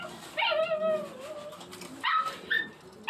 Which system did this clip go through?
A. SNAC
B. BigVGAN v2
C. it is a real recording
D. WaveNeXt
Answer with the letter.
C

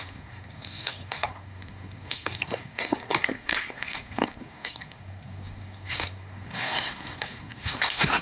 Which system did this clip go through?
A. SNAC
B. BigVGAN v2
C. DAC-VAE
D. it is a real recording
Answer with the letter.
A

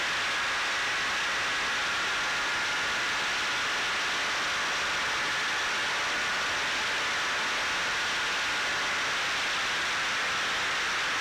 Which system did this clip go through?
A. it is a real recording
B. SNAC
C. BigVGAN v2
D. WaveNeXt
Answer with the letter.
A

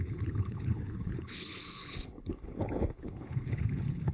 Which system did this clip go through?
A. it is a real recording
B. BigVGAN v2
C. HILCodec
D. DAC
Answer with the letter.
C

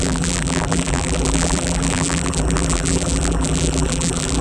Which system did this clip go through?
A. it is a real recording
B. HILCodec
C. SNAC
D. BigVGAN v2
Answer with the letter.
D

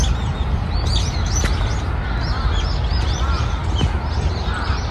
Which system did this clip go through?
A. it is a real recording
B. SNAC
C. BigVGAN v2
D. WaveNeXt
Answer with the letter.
A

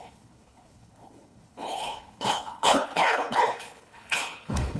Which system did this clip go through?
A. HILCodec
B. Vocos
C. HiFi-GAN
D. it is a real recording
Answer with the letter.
A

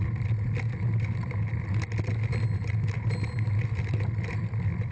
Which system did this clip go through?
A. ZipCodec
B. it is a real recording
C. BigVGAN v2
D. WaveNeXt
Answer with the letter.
B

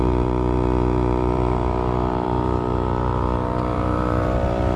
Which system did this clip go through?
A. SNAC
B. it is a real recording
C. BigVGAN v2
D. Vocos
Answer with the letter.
C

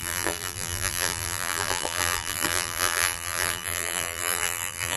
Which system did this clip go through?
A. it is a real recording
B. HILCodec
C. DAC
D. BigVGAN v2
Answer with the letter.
D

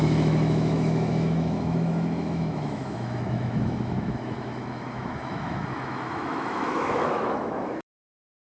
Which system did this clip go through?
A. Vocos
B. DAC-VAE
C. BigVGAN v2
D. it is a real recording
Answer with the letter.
B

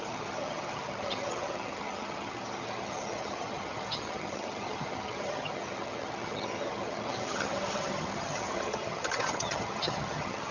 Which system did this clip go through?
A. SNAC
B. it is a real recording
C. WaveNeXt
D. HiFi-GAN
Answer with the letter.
D